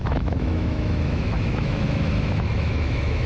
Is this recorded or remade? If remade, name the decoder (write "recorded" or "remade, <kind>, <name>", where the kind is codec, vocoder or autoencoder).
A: remade, autoencoder, DAC-VAE